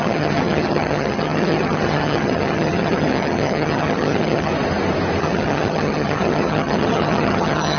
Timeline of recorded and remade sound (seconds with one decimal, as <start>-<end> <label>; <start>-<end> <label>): 0.0-4.5 remade; 4.5-5.2 recorded; 5.2-7.8 remade